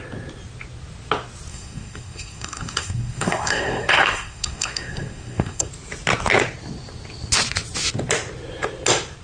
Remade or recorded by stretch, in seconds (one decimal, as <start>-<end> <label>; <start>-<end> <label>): 0.0-1.5 recorded; 1.5-5.7 remade; 5.7-9.2 recorded